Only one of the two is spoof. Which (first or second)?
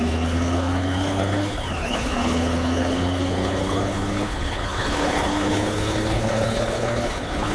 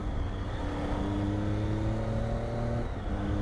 first